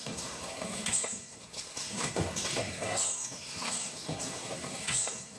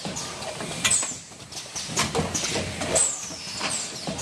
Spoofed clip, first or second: first